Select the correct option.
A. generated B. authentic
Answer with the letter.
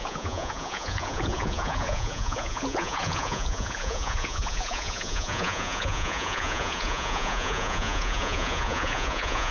A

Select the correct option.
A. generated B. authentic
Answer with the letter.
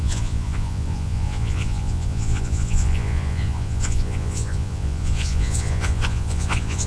A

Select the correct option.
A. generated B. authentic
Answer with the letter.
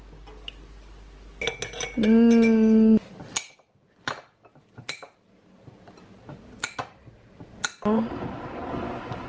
B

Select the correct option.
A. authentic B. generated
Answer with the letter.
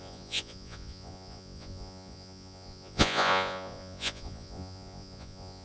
B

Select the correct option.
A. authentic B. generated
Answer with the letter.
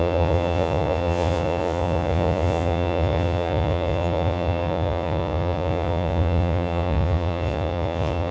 B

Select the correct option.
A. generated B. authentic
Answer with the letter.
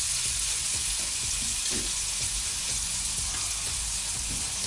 A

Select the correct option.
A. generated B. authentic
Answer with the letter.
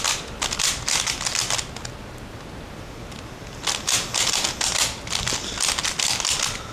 B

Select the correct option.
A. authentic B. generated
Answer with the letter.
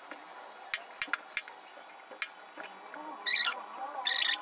A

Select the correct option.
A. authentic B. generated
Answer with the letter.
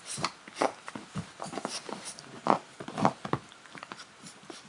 A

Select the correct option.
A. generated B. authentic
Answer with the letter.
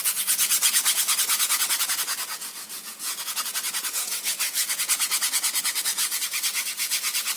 A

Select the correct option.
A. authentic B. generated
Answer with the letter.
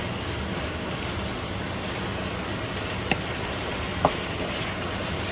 A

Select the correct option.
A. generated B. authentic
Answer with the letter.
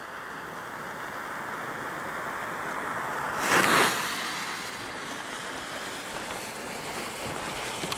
B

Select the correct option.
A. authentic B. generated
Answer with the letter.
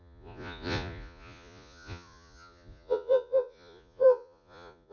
B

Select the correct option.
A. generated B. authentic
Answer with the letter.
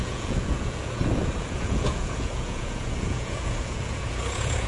A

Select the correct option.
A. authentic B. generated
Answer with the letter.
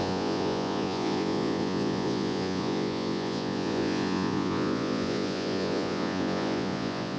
B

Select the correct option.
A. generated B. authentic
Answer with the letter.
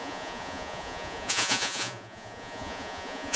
A